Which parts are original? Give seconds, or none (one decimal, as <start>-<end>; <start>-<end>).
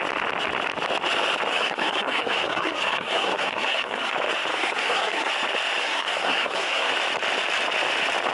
0.0-1.5; 4.1-4.5; 5.3-5.8; 6.9-8.3